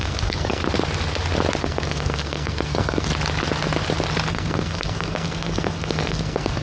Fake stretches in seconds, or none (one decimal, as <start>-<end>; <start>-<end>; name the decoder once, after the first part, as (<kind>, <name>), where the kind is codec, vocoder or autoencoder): 0.0-0.6 (codec, SNAC); 1.6-3.1; 4.3-6.6